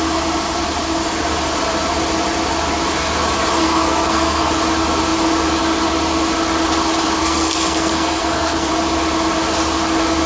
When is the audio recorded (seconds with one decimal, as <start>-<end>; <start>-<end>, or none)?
0.0-3.6; 4.5-7.2; 8.7-10.3